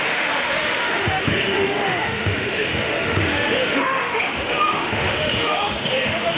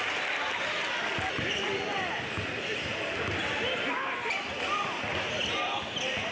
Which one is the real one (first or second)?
second